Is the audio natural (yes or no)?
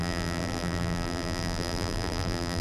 no